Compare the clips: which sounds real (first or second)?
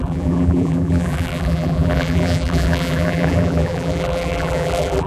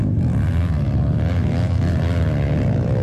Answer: second